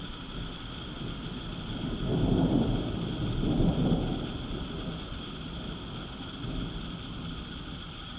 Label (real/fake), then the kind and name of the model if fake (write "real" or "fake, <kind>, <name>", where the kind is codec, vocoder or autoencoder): real